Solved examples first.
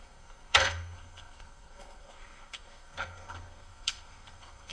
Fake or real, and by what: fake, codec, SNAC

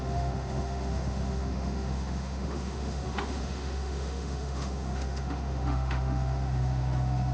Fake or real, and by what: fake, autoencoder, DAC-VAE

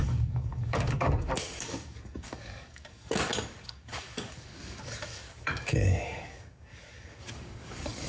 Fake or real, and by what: fake, codec, DAC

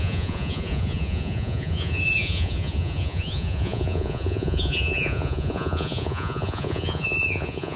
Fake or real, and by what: fake, vocoder, Vocos